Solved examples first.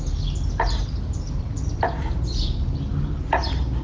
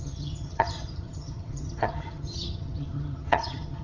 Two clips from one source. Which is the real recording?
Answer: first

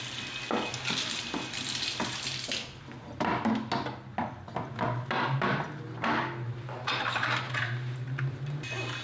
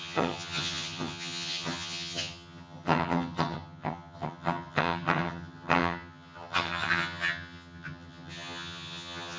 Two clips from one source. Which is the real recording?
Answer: first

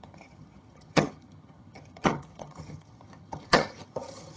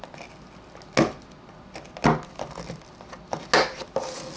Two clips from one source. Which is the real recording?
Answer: second